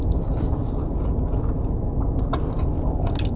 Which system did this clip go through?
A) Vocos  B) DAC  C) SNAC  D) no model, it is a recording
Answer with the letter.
D